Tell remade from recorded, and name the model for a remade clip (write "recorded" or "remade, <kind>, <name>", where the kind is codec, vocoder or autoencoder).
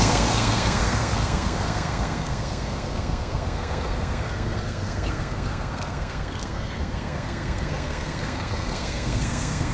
remade, codec, SNAC